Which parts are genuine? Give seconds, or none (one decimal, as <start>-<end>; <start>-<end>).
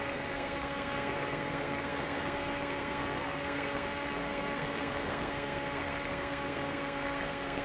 none